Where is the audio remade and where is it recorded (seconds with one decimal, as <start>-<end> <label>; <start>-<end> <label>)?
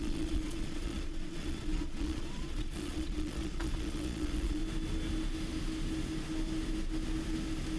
0.0-4.6 remade; 4.6-7.8 recorded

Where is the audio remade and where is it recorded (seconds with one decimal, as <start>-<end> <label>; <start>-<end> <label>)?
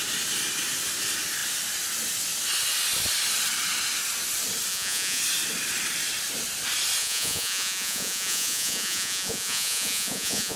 0.0-4.7 recorded; 4.7-5.2 remade; 5.2-7.0 recorded; 7.0-10.6 remade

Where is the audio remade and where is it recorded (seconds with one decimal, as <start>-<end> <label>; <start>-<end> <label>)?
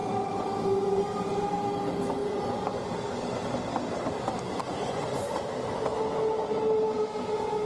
0.0-2.2 recorded; 2.2-2.8 remade; 2.8-4.7 recorded; 4.7-5.3 remade; 5.3-7.7 recorded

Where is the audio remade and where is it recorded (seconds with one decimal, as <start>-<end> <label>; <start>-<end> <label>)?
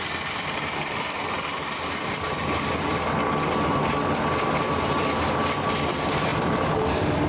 0.0-7.3 recorded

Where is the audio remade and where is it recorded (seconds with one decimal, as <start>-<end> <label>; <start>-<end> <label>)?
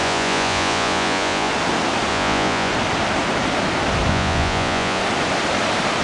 0.0-1.5 remade; 1.5-2.1 recorded; 2.1-2.7 remade; 2.7-4.1 recorded; 4.1-5.0 remade; 5.0-6.0 recorded